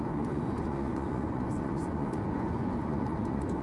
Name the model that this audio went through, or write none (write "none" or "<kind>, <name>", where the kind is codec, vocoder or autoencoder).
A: vocoder, Vocos